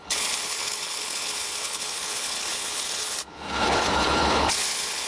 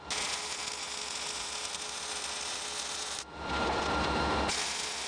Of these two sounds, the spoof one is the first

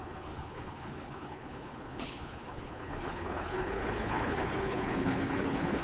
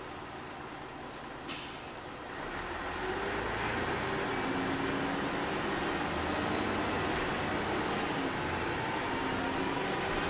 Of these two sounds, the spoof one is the first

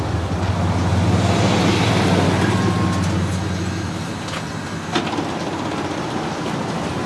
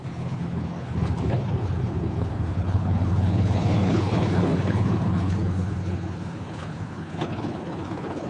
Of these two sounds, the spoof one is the second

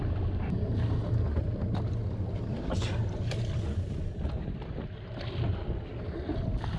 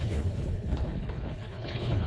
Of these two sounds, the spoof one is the second